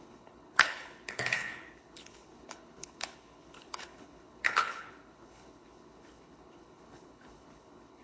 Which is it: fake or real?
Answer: fake